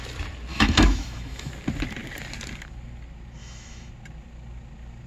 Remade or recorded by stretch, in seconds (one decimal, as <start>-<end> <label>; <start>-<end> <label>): 0.0-0.5 recorded; 0.5-1.5 remade; 1.5-3.4 recorded; 3.4-3.9 remade; 3.9-5.1 recorded